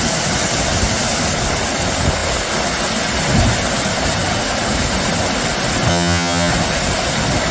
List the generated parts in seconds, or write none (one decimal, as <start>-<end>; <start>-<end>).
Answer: 5.9-6.5